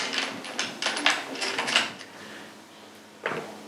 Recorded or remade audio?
recorded